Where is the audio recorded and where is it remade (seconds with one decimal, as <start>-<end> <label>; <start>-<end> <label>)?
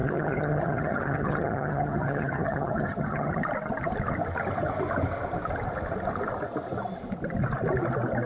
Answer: 0.0-3.4 remade; 3.4-8.3 recorded